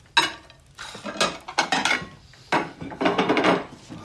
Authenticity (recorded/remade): recorded